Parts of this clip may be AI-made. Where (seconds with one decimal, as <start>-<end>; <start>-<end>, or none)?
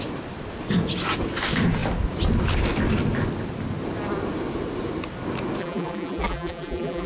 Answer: 5.6-7.1